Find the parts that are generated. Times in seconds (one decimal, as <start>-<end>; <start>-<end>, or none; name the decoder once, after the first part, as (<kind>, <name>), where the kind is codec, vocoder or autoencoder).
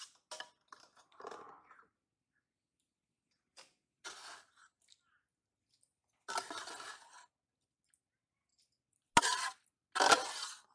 none